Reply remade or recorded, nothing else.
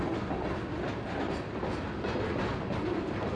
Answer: recorded